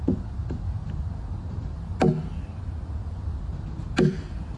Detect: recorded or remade recorded